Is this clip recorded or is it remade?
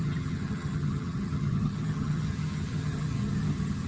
remade